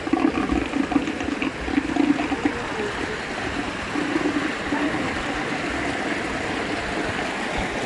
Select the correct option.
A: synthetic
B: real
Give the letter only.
B